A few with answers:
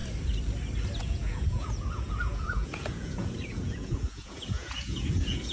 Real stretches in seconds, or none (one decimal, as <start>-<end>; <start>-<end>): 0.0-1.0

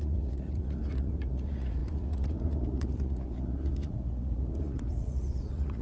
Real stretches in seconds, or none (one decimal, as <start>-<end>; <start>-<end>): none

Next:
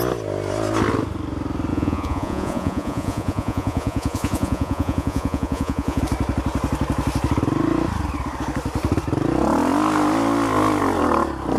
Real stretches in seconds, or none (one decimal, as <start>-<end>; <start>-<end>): 0.0-1.7; 6.0-11.6

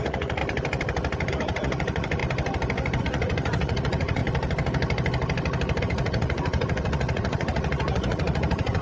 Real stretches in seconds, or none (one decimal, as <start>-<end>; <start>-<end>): 0.4-1.3; 2.2-3.0; 4.2-5.8

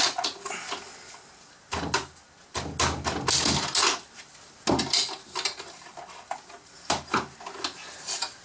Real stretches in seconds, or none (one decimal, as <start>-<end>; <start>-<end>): 0.0-8.4

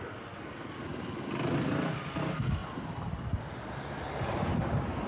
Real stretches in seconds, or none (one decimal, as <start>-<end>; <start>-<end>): 0.0-5.1